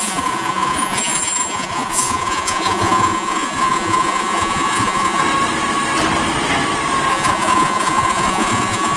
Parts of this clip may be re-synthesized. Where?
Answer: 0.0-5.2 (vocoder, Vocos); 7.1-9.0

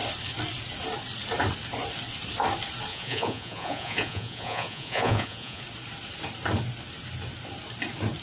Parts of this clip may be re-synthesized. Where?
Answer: 2.9-5.6 (vocoder, Vocos)

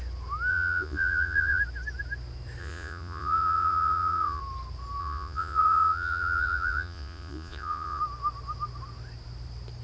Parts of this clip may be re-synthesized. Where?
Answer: 0.5-1.6 (vocoder, Vocos); 2.6-4.4; 5.0-8.0

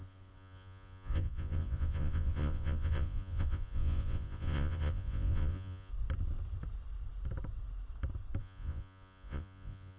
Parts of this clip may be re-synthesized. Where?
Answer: 0.0-5.9 (vocoder, Vocos); 8.4-10.0

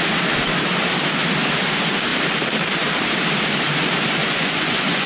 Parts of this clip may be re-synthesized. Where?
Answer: 4.2-5.1 (vocoder, Vocos)

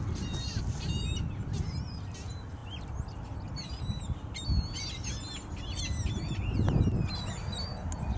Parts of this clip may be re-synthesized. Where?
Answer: none

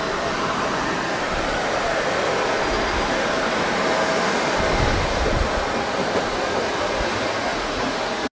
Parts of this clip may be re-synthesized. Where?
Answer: 7.5-8.3 (vocoder, Vocos)